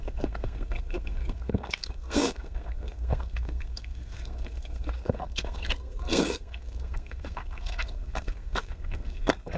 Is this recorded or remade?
remade